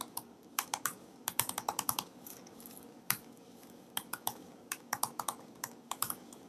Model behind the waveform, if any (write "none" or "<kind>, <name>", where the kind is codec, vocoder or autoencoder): codec, DAC